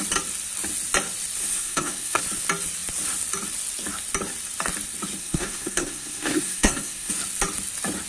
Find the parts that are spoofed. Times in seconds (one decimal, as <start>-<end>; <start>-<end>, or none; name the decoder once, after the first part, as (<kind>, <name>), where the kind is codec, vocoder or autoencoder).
1.4-2.2 (codec, SNAC); 5.2-7.1